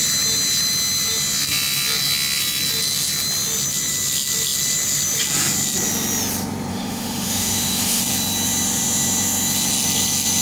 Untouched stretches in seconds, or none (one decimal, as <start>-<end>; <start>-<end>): 0.0-6.7; 8.0-10.4